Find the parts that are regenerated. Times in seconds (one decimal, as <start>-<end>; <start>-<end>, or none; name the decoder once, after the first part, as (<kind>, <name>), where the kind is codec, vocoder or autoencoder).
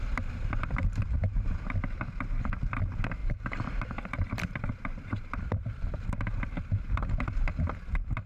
3.2-7.6 (vocoder, BigVGAN v2)